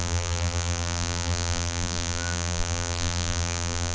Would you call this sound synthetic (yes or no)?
yes